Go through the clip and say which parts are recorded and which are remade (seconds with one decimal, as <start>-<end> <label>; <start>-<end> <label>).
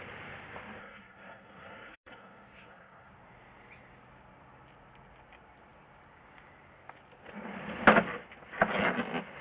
0.0-0.8 recorded; 0.8-3.1 remade; 3.1-9.4 recorded